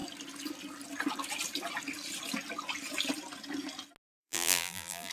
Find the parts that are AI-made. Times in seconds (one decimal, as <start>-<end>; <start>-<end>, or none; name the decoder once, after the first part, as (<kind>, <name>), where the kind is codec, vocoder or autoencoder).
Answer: 4.2-5.1 (vocoder, BigVGAN v2)

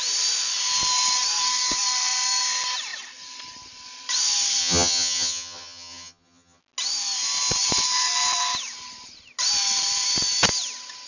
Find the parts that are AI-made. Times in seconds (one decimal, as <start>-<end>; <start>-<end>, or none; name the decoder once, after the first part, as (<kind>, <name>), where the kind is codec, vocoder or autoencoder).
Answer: 4.6-6.6 (vocoder, HiFi-GAN)

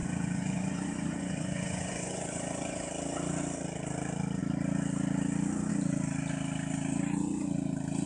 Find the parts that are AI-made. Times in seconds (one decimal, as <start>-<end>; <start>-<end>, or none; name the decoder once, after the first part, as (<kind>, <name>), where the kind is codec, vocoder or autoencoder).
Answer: 0.0-2.9 (vocoder, Vocos)

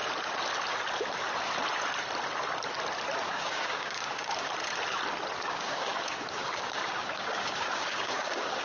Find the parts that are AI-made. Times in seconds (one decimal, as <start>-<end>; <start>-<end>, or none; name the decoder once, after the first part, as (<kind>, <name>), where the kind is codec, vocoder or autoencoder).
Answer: 3.2-4.5 (codec, DAC); 5.4-8.6